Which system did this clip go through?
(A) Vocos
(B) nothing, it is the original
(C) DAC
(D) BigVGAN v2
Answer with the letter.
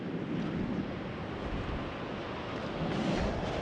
B